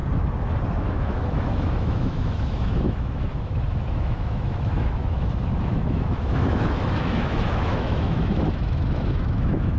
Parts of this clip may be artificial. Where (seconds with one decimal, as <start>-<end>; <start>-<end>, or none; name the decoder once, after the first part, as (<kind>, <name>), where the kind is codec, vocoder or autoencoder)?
0.8-9.8 (autoencoder, DAC-VAE)